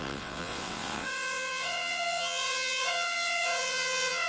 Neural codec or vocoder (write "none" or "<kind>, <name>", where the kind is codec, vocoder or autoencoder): vocoder, WaveNeXt